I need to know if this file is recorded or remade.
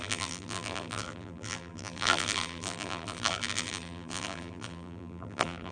remade